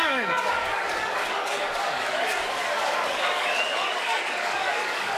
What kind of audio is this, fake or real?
fake